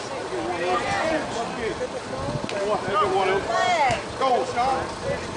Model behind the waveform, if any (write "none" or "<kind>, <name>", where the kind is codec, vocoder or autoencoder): none